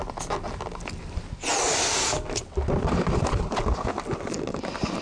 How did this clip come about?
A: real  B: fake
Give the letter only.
A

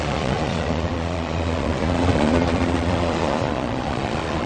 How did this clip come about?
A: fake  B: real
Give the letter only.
A